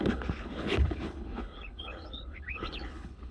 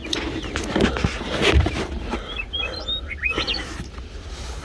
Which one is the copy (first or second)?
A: first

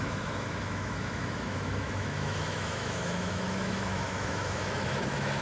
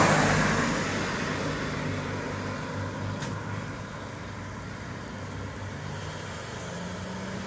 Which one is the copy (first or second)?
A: first